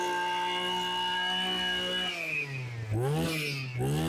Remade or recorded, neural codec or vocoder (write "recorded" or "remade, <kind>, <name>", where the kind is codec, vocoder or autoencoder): recorded